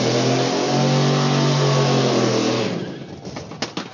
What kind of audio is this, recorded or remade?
recorded